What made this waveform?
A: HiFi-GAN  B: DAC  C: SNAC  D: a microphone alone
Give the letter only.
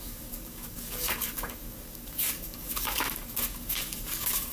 B